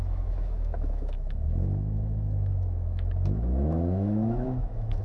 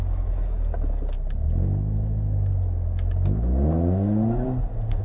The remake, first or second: first